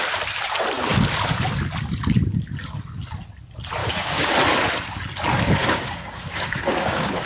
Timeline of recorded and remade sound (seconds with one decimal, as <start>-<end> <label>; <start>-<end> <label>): 0.0-3.8 recorded; 3.8-4.3 remade; 4.3-5.6 recorded; 5.6-7.3 remade